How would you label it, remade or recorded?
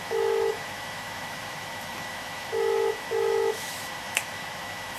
remade